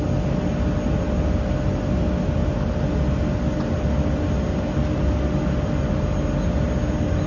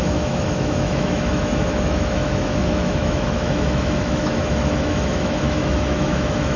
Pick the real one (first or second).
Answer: first